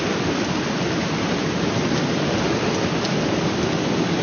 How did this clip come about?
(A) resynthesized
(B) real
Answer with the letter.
B